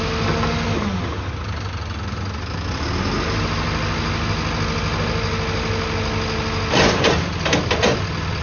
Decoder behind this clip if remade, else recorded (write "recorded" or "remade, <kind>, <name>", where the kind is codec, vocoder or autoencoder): recorded